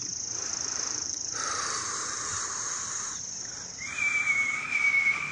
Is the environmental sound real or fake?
fake